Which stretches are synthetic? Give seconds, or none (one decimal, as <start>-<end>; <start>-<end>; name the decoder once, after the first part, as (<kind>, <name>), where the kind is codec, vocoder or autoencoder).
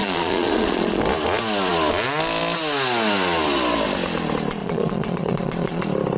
0.0-1.0 (vocoder, Vocos); 4.6-5.8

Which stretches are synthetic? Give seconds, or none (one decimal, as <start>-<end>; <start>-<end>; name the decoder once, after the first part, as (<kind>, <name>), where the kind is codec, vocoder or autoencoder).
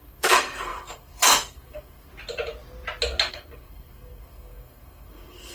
0.0-2.1 (codec, SNAC); 3.3-5.5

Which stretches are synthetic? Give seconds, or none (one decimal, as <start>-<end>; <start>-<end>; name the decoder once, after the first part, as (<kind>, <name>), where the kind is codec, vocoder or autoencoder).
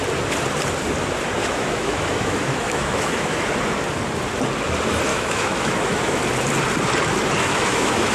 1.4-3.5 (autoencoder, DAC-VAE); 5.1-6.2; 7.4-8.1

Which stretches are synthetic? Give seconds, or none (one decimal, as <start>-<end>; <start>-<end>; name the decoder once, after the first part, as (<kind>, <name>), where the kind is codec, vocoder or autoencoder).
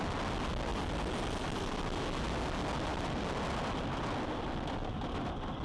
none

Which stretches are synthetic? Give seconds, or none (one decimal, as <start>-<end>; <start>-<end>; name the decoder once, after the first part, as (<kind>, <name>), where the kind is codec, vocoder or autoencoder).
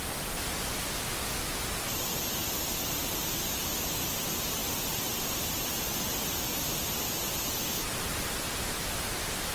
none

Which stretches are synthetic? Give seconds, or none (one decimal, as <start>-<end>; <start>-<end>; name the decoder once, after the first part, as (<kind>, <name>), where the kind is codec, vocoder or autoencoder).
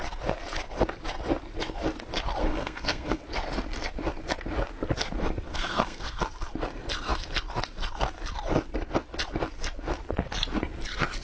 2.4-3.2 (codec, SNAC); 5.5-6.2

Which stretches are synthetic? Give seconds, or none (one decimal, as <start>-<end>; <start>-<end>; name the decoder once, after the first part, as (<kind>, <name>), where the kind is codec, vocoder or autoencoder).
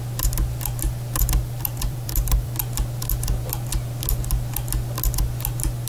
1.4-2.6 (vocoder, BigVGAN v2)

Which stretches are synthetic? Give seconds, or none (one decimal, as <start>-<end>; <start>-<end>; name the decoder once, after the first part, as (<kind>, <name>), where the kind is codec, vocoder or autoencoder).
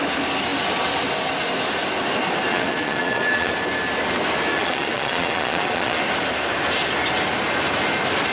2.5-3.5 (vocoder, Vocos); 4.5-6.0